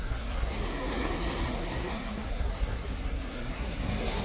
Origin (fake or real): fake